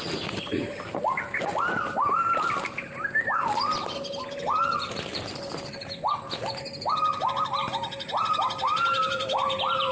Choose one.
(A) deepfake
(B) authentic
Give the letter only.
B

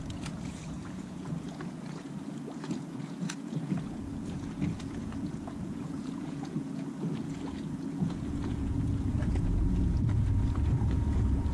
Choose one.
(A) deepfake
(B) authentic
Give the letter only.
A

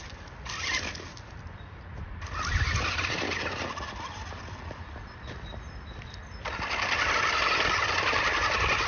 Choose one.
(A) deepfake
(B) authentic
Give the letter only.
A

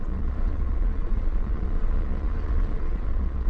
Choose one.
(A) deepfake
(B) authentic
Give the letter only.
A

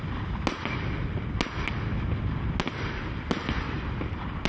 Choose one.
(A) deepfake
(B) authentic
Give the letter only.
B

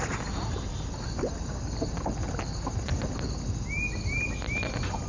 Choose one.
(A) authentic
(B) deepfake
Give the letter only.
A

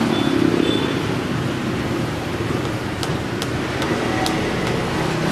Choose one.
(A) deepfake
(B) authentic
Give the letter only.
B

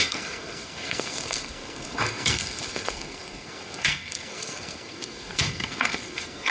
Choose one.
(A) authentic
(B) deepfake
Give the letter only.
B